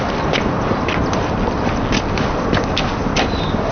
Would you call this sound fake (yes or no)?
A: no